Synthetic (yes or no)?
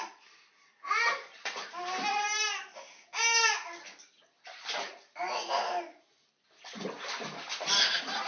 no